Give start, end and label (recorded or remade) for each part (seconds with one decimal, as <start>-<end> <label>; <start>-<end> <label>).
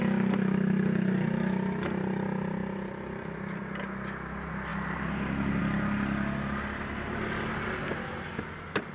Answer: 0.0-8.9 recorded